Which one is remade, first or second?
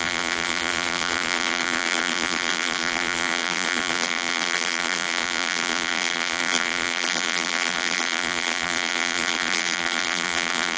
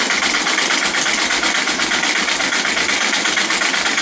first